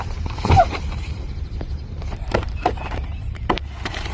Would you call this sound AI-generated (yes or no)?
yes